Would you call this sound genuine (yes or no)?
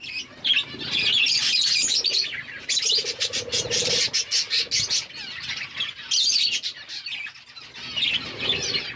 yes